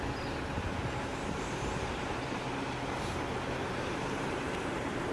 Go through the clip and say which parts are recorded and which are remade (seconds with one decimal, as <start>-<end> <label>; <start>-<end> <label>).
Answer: 0.0-1.1 recorded; 1.1-2.4 remade; 2.4-3.6 recorded; 3.6-5.1 remade